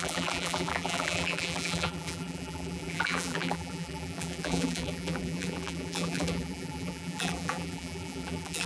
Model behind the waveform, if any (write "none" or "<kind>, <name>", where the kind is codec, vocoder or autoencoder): vocoder, BigVGAN v2